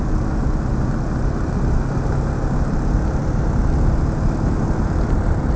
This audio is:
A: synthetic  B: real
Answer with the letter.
B